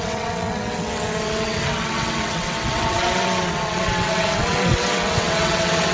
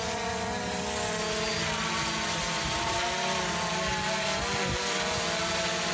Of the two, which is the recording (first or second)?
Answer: second